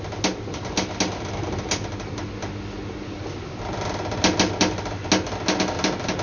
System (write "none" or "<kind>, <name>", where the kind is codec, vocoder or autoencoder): none